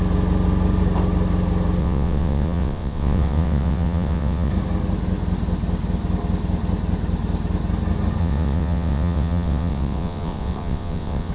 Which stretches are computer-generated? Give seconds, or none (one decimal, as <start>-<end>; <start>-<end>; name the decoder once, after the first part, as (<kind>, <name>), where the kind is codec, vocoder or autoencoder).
1.8-4.5 (vocoder, WaveNeXt); 8.2-11.3